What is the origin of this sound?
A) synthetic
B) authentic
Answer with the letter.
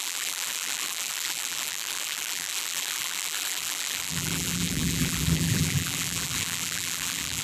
A